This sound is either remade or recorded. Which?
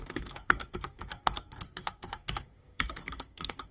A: remade